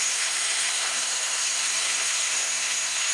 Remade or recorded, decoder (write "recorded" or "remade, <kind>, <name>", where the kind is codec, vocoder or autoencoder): remade, codec, SNAC